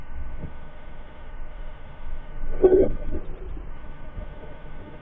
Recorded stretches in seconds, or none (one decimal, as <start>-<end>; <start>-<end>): 3.2-3.7